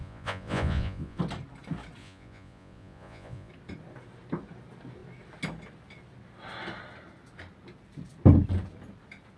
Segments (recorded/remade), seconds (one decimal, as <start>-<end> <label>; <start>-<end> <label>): 0.0-1.2 remade; 1.2-2.0 recorded; 2.0-3.5 remade; 3.5-9.4 recorded